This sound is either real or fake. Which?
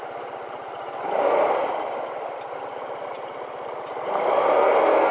real